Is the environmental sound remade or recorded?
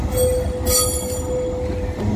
recorded